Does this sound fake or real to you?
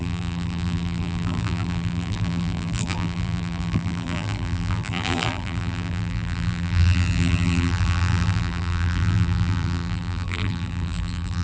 fake